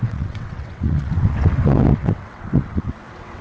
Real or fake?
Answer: fake